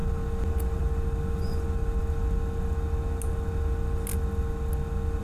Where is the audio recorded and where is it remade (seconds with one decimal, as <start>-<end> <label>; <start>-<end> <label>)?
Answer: 0.0-5.2 recorded